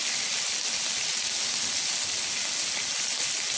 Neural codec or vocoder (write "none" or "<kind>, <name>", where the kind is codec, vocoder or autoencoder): none